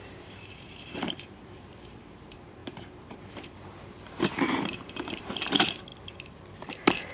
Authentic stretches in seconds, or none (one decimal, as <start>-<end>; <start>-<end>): none